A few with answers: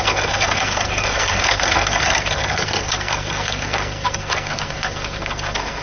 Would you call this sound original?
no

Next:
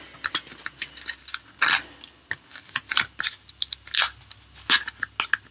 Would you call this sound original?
yes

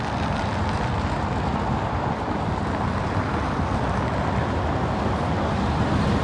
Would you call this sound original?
yes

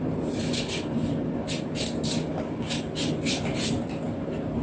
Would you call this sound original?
yes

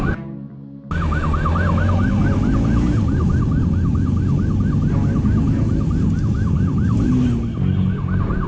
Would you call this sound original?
yes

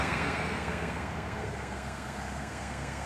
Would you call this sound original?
no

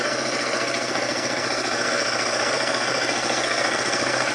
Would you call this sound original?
no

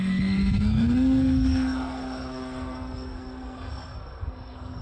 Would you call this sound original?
no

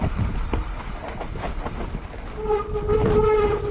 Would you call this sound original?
yes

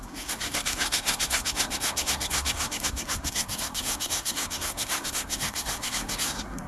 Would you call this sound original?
no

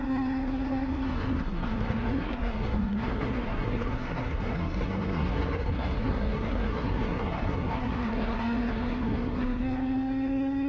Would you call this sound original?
no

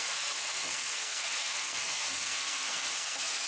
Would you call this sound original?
no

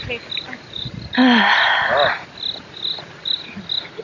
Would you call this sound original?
yes